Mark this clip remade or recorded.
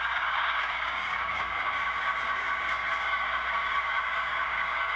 remade